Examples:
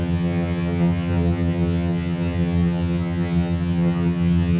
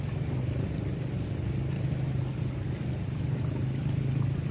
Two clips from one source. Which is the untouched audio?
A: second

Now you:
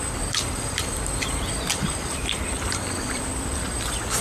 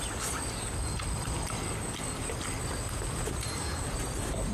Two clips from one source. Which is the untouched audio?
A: second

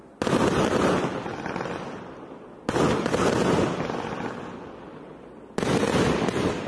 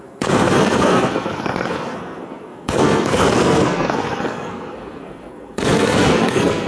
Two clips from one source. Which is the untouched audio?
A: first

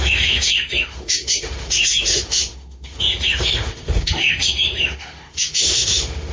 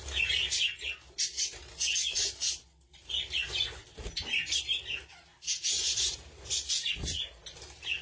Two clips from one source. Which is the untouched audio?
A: second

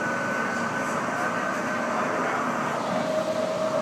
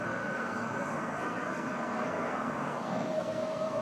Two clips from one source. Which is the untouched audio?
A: first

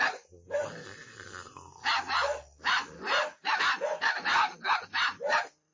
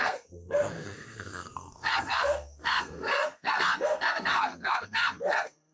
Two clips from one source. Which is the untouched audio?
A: first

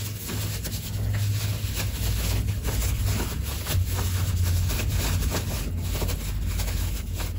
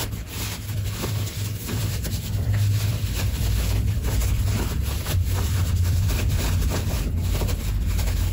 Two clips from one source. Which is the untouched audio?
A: first